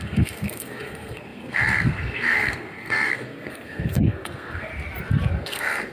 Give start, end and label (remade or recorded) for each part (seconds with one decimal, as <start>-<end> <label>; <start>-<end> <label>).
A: 0.0-4.7 remade; 4.7-5.3 recorded; 5.3-5.9 remade